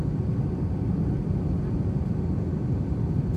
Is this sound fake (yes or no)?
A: no